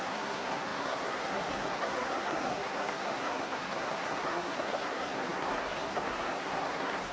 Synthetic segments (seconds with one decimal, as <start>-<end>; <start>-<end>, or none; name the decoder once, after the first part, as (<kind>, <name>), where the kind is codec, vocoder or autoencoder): 0.0-7.1 (codec, SNAC)